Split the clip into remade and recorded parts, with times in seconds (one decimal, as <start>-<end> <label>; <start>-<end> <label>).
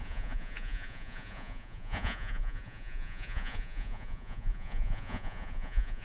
0.0-6.0 remade